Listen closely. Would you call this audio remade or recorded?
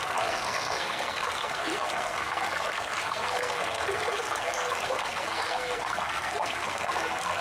remade